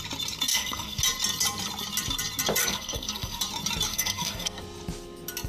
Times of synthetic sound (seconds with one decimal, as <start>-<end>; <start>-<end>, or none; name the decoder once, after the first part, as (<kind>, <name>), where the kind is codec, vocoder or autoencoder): 0.5-1.0 (codec, SNAC); 2.6-3.4; 3.9-4.6